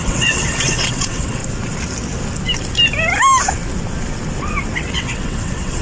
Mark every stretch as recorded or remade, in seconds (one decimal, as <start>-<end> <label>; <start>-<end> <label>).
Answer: 0.0-1.4 remade; 1.4-4.9 recorded; 4.9-5.8 remade

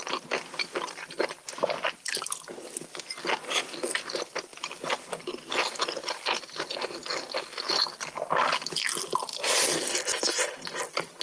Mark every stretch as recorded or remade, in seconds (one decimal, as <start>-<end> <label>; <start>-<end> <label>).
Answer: 0.0-11.2 recorded